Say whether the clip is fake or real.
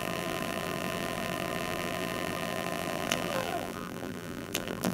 fake